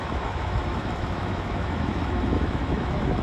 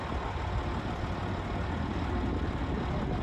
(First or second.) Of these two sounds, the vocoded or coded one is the first